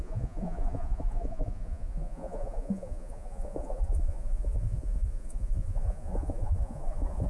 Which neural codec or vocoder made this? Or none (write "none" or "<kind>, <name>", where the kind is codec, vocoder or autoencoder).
vocoder, Vocos